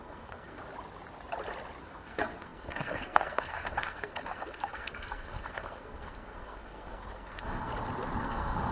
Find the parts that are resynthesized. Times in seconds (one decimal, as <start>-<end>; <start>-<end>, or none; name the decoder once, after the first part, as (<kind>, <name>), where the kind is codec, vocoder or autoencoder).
0.0-0.6 (codec, SNAC); 1.8-7.7; 8.2-8.7